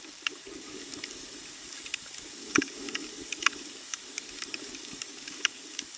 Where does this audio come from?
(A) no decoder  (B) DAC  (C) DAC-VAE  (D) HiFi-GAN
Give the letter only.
B